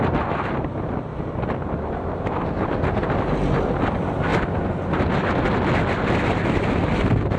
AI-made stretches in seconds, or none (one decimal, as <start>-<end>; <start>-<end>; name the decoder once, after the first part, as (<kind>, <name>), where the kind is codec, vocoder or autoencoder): none